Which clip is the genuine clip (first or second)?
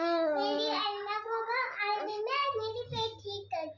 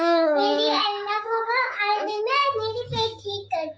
first